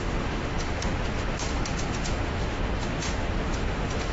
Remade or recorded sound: remade